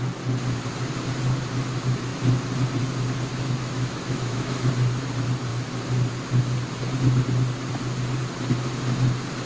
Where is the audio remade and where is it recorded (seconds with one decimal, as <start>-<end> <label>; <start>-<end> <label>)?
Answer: 0.0-3.3 recorded; 3.3-4.7 remade; 4.7-9.5 recorded